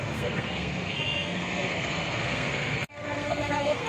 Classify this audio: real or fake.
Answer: fake